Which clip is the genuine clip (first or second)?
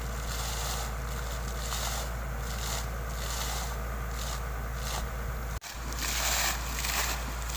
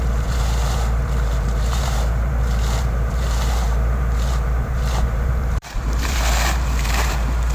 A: first